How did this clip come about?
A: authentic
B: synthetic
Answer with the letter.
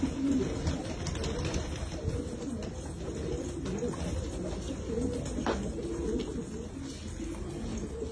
A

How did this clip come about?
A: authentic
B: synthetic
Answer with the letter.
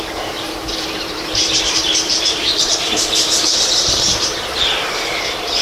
B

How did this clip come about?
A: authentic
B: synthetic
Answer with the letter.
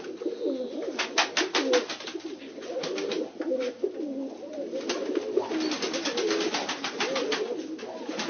A